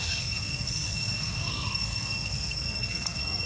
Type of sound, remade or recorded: remade